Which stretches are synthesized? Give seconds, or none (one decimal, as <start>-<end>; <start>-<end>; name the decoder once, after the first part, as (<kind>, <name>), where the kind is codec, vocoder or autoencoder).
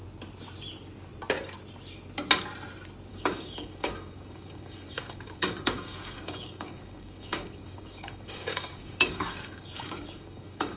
3.1-10.8 (codec, DAC)